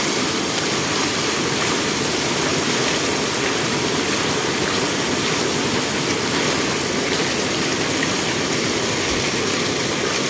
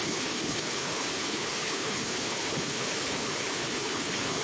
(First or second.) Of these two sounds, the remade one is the second